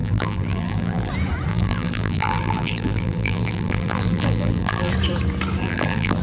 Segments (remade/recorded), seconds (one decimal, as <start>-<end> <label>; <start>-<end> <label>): 0.0-1.1 remade; 1.1-1.5 recorded; 1.5-4.9 remade; 4.9-5.6 recorded; 5.6-6.2 remade